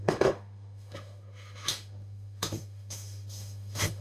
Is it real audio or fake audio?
fake